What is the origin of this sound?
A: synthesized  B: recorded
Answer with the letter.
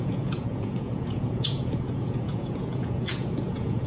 A